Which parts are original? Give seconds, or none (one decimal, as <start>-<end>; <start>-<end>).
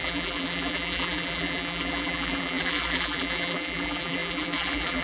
none